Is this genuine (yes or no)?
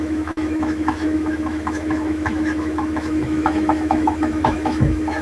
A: no